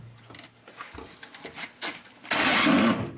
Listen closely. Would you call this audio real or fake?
real